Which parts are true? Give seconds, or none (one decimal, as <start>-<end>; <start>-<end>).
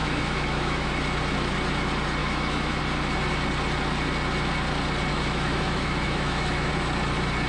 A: 0.9-2.2; 2.8-5.1; 6.7-7.5